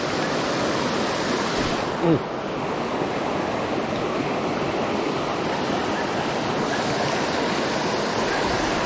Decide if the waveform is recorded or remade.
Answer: recorded